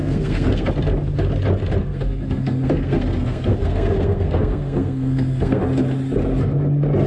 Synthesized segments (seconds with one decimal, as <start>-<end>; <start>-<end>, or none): 0.0-0.7; 1.8-5.6